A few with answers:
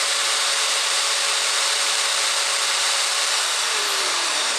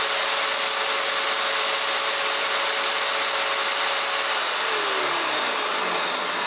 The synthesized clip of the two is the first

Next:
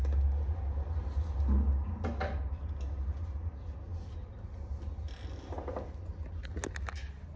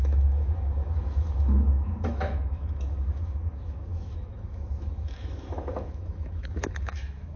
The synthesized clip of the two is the second